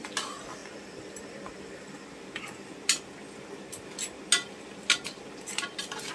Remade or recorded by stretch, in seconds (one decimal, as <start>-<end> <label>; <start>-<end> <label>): 0.0-6.1 recorded